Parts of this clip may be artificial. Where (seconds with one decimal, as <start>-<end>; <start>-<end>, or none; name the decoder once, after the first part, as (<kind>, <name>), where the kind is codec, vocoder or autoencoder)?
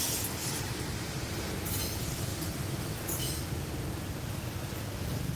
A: 0.4-1.8 (vocoder, BigVGAN v2); 2.3-3.4